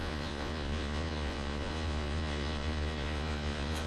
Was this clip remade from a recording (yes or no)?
yes